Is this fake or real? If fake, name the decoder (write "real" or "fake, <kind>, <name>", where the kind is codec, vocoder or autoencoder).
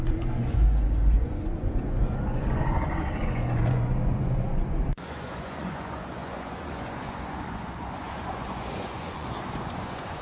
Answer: fake, vocoder, Vocos